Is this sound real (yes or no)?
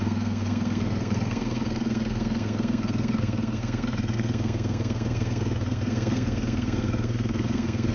no